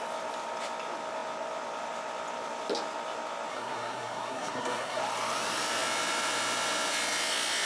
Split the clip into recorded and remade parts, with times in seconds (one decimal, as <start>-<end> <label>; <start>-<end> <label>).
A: 0.0-3.5 recorded; 3.5-5.0 remade; 5.0-7.7 recorded